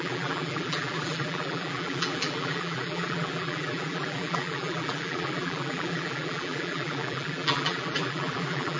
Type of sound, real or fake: fake